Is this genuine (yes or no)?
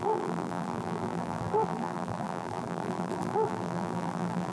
no